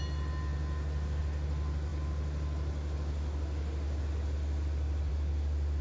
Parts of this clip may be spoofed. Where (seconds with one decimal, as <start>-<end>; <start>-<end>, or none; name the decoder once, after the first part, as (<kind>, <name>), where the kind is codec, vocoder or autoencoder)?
none